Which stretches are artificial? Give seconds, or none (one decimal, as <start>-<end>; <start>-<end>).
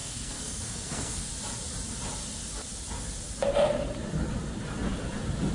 0.0-1.3